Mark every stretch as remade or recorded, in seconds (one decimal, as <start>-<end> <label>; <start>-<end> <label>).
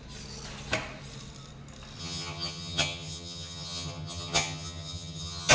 0.0-2.0 recorded; 2.0-5.5 remade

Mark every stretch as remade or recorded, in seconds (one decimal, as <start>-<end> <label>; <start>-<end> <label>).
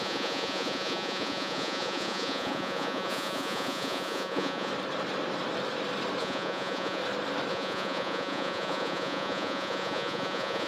0.0-4.7 remade; 4.7-6.2 recorded; 6.2-7.0 remade; 7.0-7.5 recorded; 7.5-10.7 remade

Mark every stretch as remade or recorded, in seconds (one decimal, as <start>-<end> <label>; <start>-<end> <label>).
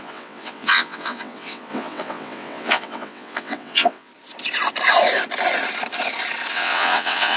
0.0-4.1 remade; 4.1-6.5 recorded; 6.5-7.4 remade